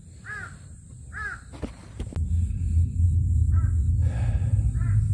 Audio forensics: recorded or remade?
recorded